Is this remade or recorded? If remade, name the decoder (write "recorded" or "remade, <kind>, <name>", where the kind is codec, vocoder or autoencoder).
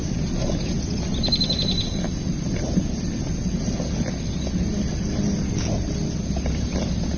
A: recorded